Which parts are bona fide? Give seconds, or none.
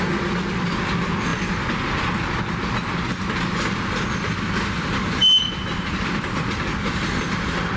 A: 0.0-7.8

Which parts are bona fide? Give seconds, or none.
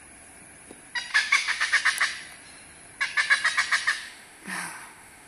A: 0.0-1.1; 1.8-3.9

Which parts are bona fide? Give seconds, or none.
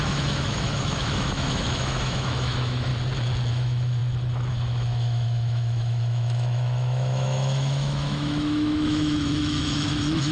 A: 2.9-3.5; 4.0-4.5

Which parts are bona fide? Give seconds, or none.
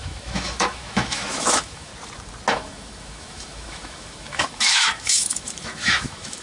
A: 1.9-2.5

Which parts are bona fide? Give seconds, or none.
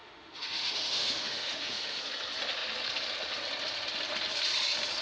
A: 2.0-5.0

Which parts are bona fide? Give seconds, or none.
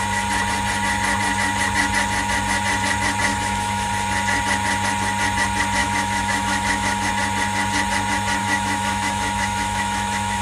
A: 0.0-3.3; 3.9-5.8; 7.1-8.4